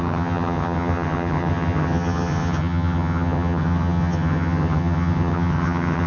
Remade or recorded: remade